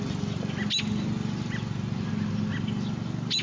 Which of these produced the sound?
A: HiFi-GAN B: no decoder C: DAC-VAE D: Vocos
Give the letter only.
B